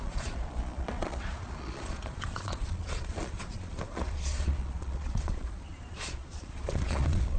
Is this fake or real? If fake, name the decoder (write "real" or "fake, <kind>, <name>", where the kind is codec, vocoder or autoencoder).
fake, vocoder, Vocos